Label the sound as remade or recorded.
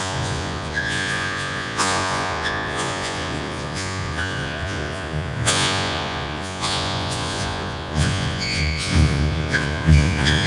remade